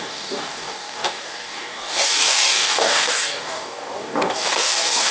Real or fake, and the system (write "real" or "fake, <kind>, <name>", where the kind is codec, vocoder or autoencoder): fake, codec, DAC